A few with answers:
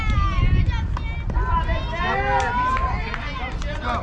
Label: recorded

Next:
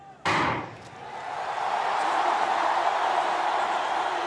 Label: remade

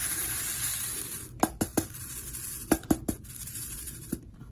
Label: remade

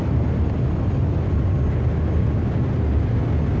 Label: recorded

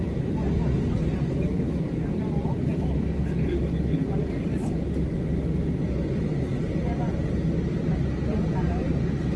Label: recorded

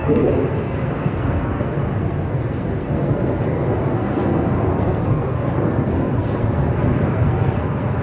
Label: remade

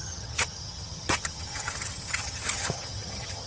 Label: remade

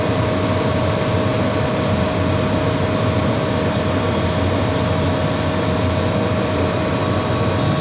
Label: recorded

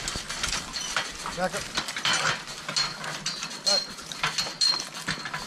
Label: recorded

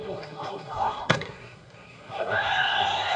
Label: remade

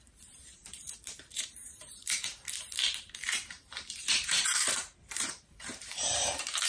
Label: remade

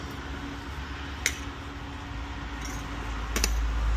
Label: recorded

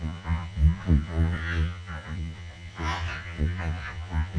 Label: remade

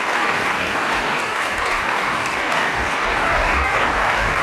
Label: remade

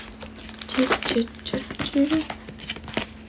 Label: recorded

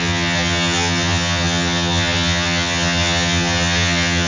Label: remade